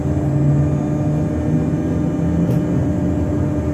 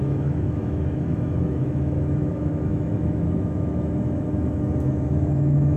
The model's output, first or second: second